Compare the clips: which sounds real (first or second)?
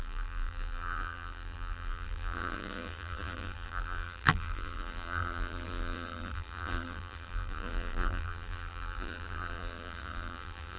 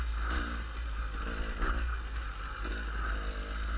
second